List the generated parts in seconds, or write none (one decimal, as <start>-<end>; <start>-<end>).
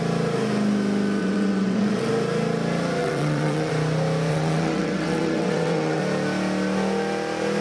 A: 1.2-2.1; 3.0-3.7; 4.3-6.0